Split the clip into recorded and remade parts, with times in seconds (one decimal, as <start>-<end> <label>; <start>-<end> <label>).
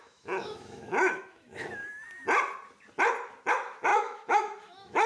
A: 0.0-1.8 remade; 1.8-3.5 recorded; 3.5-5.1 remade